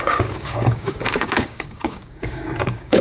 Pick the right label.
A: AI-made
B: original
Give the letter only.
A